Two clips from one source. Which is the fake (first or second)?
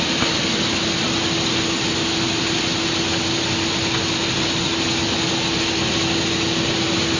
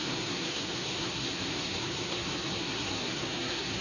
second